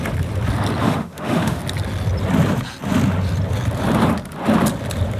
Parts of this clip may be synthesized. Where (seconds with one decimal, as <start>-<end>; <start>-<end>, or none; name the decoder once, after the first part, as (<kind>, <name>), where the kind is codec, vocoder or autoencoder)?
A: 0.8-1.6 (autoencoder, DAC-VAE)